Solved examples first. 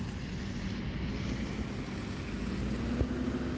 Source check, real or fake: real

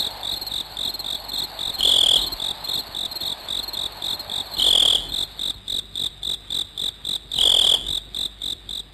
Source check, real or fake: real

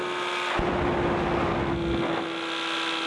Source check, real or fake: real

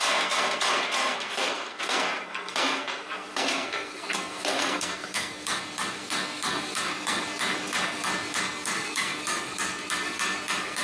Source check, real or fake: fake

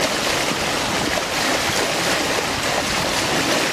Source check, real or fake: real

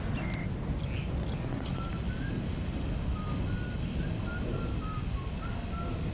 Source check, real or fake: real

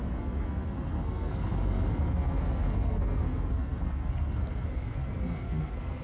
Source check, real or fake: fake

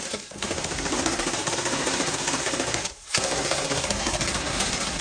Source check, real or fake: fake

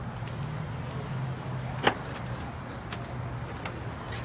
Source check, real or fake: real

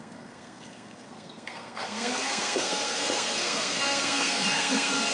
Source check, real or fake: fake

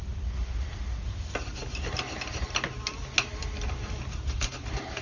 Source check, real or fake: real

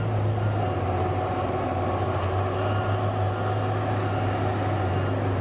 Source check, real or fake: real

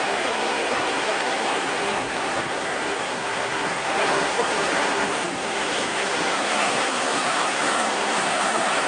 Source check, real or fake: fake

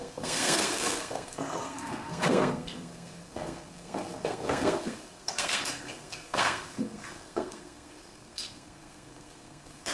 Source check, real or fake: fake